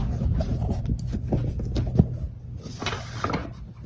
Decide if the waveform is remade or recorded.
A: recorded